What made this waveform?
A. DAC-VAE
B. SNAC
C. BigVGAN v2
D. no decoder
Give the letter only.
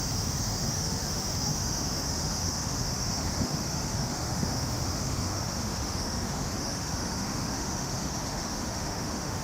A